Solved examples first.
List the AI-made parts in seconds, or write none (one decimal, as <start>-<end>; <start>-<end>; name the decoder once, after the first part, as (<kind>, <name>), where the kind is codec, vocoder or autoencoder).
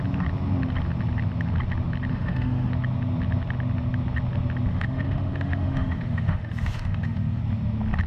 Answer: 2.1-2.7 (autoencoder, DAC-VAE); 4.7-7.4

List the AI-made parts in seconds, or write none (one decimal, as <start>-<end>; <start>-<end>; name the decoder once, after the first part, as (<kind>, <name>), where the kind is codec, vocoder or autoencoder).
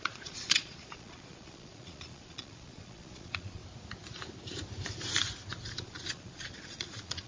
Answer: 0.0-3.6 (vocoder, Vocos); 5.7-7.3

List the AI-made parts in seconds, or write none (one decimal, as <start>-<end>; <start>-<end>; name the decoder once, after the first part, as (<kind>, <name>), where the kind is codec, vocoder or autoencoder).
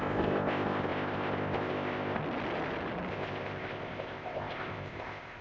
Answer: 0.0-2.2 (codec, ZipCodec); 3.1-5.4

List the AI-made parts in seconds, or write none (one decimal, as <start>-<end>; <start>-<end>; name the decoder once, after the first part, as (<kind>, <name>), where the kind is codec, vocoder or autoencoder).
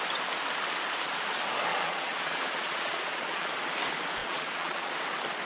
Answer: 1.7-3.5 (vocoder, Vocos); 4.2-4.9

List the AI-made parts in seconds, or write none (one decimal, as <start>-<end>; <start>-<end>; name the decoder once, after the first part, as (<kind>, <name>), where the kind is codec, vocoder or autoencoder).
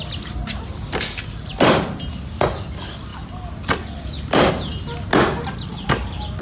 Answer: none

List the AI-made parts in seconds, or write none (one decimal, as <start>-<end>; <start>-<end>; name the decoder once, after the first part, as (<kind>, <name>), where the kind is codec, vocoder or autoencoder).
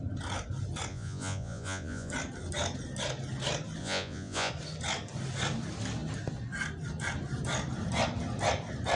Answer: 0.9-2.1 (vocoder, Vocos); 3.8-4.5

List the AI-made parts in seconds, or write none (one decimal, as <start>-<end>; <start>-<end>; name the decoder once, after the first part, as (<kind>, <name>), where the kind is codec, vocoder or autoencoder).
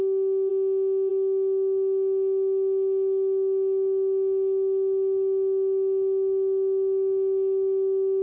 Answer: 0.0-0.5 (autoencoder, DAC-VAE); 1.1-8.2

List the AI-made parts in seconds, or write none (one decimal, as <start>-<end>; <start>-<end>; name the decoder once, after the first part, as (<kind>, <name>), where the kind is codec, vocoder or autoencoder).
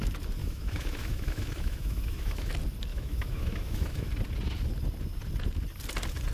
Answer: 0.4-2.5 (autoencoder, DAC-VAE); 2.9-4.1